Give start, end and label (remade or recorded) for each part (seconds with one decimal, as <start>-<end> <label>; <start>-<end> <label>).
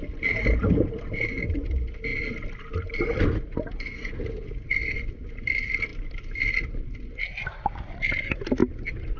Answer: 0.0-9.2 recorded